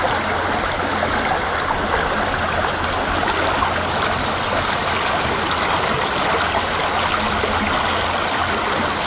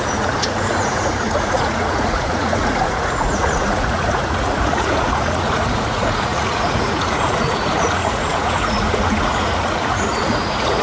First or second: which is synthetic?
second